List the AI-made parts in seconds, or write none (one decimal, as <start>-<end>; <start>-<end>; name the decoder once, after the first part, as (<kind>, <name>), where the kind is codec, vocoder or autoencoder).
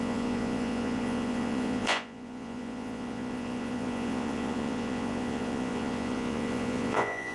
0.0-7.3 (vocoder, Vocos)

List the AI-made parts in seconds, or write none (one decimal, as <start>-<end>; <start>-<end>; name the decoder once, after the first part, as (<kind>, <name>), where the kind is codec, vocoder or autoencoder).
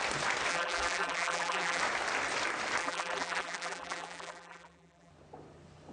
0.5-1.8 (vocoder, BigVGAN v2); 2.8-5.1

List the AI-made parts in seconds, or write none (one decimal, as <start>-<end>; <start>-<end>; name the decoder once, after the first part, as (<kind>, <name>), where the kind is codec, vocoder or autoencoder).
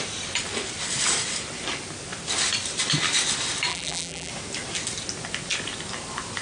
3.7-4.3 (vocoder, BigVGAN v2)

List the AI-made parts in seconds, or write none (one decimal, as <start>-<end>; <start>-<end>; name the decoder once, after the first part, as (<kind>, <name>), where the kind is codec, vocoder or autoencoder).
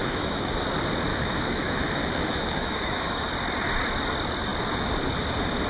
0.0-0.6 (autoencoder, DAC-VAE); 1.1-3.2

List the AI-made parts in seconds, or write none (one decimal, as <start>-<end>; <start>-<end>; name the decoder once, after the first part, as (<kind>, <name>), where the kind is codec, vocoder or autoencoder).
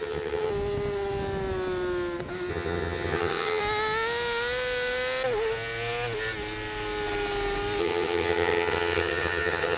0.0-0.5 (vocoder, HiFi-GAN); 2.5-3.6; 7.8-9.8